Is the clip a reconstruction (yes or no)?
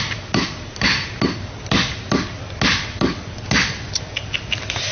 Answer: no